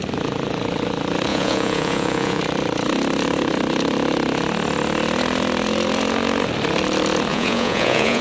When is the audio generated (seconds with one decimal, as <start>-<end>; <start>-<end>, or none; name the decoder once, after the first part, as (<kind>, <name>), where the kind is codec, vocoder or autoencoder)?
1.3-2.4 (vocoder, Vocos); 7.3-8.2